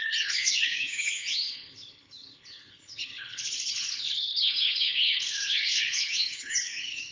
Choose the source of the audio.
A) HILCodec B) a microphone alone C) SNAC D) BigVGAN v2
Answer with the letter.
A